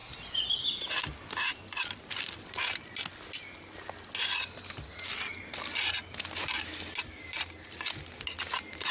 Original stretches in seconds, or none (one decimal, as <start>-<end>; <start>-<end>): 0.0-8.9